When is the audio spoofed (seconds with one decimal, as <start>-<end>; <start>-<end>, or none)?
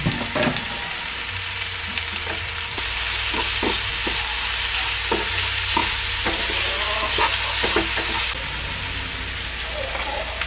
none